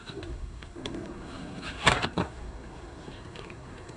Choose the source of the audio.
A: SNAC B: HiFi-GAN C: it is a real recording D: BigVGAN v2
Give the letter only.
A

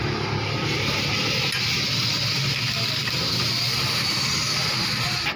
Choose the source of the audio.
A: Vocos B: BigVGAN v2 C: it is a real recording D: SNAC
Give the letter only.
C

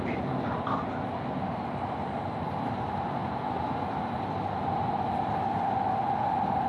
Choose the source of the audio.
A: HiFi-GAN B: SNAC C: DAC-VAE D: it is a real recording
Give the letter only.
D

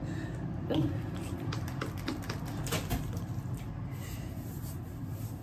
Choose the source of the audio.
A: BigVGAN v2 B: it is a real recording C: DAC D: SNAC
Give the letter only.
B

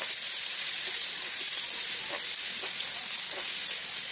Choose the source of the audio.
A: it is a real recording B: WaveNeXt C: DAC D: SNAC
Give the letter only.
A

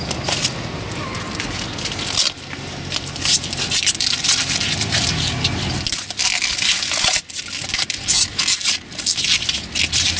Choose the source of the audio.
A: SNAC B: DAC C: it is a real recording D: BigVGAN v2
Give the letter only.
C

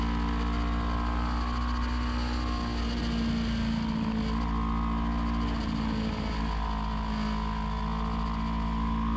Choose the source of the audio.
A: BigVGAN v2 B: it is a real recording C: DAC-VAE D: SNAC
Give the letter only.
B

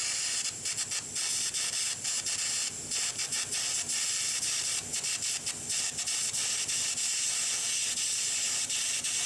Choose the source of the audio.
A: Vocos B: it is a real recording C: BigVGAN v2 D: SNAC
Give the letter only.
B